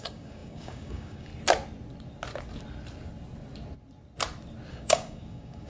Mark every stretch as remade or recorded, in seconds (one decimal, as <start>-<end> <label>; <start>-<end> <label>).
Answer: 0.0-1.3 remade; 1.3-4.7 recorded; 4.7-5.7 remade